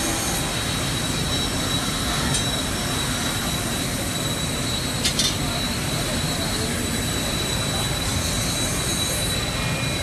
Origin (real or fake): real